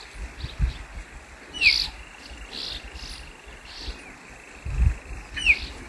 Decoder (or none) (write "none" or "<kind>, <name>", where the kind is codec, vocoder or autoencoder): none